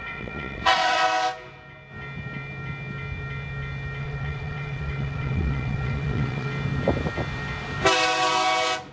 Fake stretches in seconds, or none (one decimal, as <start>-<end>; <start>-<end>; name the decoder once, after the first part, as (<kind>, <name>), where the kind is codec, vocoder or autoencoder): 0.0-1.0 (vocoder, WaveNeXt); 4.0-6.5